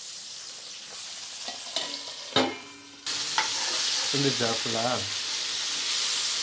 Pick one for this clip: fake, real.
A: real